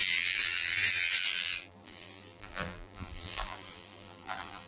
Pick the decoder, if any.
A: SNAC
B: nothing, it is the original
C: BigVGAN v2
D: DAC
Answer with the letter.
C